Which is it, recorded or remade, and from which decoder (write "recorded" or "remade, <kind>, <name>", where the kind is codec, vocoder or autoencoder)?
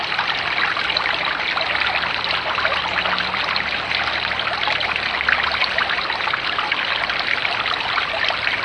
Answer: recorded